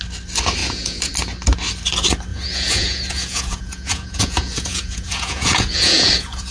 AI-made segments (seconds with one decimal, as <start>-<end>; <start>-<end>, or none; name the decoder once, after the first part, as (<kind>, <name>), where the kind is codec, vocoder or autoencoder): 0.6-1.1 (vocoder, Vocos); 2.3-6.5